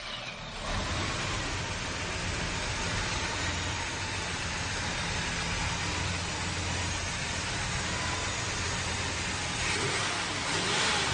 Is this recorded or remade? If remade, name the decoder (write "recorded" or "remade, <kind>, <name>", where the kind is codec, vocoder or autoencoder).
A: recorded